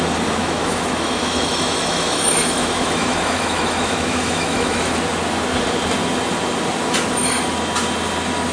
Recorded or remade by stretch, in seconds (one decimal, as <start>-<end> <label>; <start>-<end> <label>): 0.0-0.4 recorded; 0.4-5.0 remade; 5.0-8.5 recorded